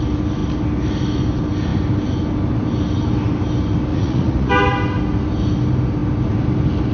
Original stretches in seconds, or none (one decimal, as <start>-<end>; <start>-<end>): 0.0-3.9; 4.5-6.9